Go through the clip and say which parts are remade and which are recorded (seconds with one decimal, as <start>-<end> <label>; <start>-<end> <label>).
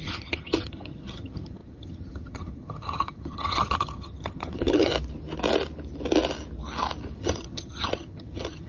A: 0.0-4.9 remade; 4.9-7.2 recorded; 7.2-8.7 remade